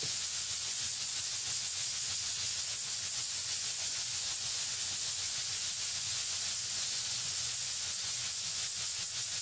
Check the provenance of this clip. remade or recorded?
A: remade